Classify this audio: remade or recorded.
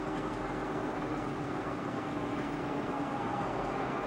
remade